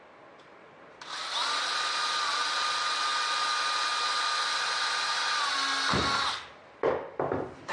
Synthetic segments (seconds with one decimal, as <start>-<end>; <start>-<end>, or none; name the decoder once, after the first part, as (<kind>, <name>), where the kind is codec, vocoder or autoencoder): none